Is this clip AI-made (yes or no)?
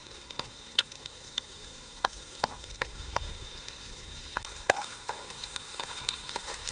yes